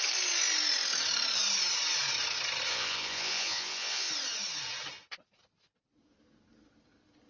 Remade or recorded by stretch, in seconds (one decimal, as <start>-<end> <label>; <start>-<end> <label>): 0.0-2.7 recorded; 2.7-4.1 remade; 4.1-7.3 recorded